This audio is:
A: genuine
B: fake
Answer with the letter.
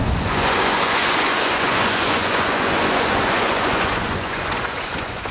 B